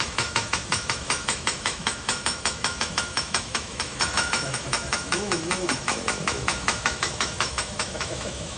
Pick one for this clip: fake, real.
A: fake